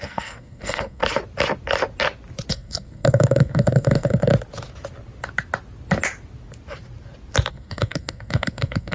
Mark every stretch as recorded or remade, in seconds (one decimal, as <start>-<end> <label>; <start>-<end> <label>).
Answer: 0.0-1.0 remade; 1.0-2.5 recorded; 2.5-4.3 remade; 4.3-7.5 recorded; 7.5-8.9 remade